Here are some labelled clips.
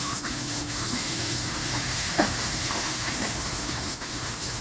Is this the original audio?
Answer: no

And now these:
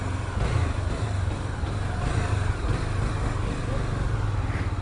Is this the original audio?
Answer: yes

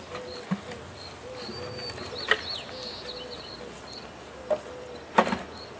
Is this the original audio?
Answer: yes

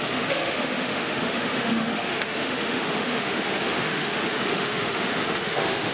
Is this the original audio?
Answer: no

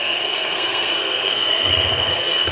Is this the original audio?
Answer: no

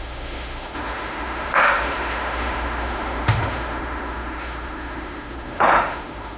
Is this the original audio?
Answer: no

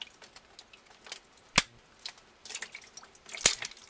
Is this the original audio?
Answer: yes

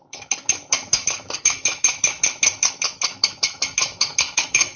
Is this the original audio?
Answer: no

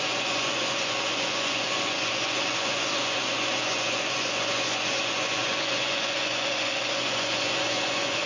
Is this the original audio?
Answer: no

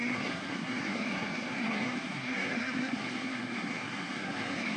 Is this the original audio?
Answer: no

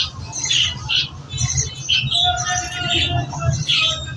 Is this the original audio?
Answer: yes